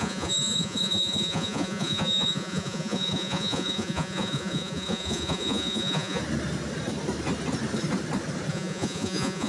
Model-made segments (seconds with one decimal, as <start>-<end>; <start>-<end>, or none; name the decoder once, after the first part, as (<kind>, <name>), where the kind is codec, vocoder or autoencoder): 0.0-6.2 (vocoder, Vocos); 8.5-9.5